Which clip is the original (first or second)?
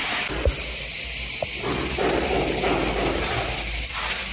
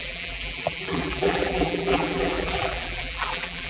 first